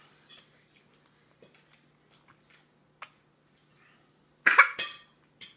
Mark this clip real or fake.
real